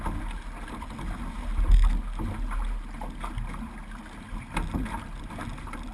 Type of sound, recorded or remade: recorded